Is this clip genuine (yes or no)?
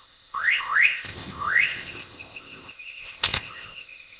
no